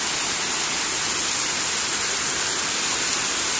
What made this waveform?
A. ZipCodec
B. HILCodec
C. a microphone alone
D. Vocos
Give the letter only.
C